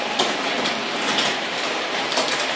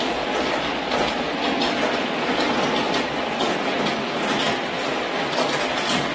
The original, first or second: second